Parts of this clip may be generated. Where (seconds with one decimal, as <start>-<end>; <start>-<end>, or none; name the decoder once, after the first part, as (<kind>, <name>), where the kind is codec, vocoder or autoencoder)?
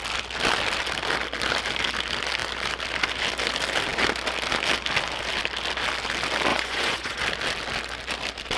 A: 6.5-7.2 (vocoder, Vocos)